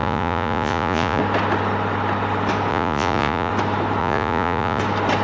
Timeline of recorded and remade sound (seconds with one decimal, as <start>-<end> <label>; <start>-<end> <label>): 0.0-1.2 remade; 1.2-2.7 recorded; 2.7-3.5 remade; 3.5-4.0 recorded; 4.0-4.8 remade; 4.8-5.2 recorded